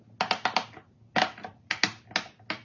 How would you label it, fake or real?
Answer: real